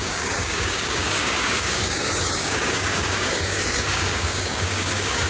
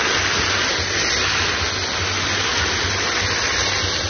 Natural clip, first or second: second